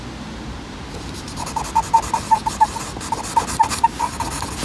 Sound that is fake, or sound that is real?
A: real